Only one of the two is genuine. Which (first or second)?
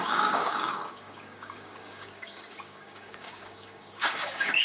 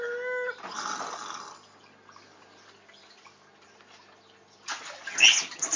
second